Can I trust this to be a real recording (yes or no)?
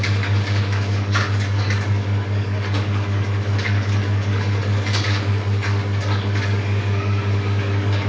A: no